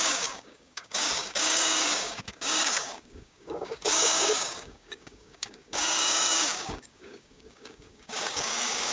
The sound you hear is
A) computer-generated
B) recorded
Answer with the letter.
A